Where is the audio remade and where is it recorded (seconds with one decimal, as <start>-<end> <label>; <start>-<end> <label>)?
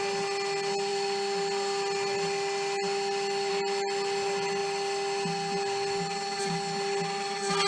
0.0-7.7 recorded